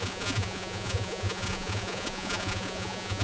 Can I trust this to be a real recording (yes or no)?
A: no